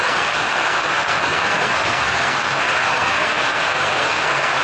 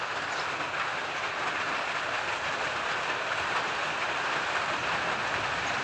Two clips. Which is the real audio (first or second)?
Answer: second